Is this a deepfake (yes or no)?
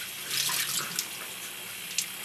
no